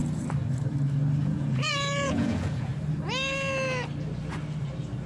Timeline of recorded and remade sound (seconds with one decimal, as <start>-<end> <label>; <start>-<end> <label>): 0.0-1.2 recorded; 1.2-2.7 remade; 2.7-5.1 recorded